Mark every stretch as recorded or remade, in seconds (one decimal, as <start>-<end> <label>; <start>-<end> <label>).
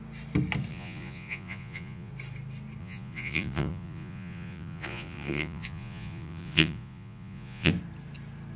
0.0-0.7 recorded; 0.7-2.1 remade; 2.1-2.8 recorded; 2.8-7.7 remade; 7.7-8.6 recorded